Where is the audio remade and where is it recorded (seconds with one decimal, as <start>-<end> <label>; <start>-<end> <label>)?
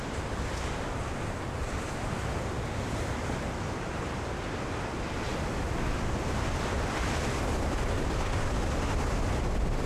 0.0-9.9 recorded